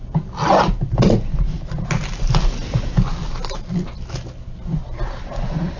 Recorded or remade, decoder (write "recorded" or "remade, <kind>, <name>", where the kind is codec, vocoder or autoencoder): recorded